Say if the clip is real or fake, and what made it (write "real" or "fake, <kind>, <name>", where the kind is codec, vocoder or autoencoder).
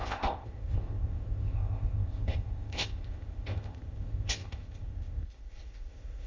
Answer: fake, codec, ZipCodec